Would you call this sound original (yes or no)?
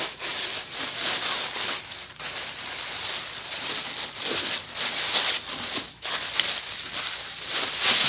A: yes